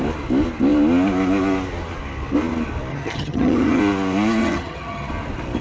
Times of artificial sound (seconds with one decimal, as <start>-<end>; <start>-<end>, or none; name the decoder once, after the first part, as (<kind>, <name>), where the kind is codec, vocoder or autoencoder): 2.9-3.8 (vocoder, HiFi-GAN); 4.4-5.1